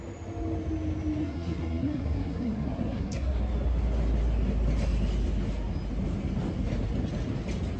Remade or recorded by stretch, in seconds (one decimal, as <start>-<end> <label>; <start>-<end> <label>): 0.0-1.2 recorded; 1.2-3.4 remade; 3.4-7.8 recorded